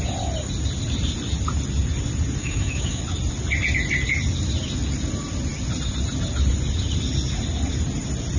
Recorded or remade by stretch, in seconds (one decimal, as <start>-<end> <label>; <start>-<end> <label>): 0.0-2.4 recorded; 2.4-3.0 remade; 3.0-8.4 recorded